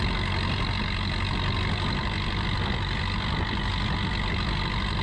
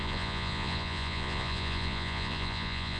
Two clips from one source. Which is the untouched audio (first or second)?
first